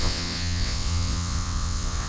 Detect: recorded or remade remade